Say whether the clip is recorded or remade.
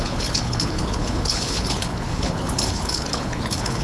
remade